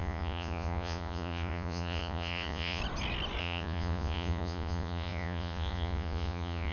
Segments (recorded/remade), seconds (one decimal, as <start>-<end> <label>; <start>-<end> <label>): 0.0-2.8 remade; 2.8-3.4 recorded; 3.4-6.7 remade